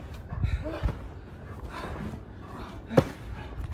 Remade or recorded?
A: recorded